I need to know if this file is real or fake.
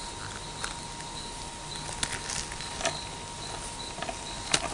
real